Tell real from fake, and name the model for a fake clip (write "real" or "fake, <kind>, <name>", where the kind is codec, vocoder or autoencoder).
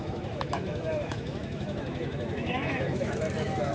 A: fake, autoencoder, DAC-VAE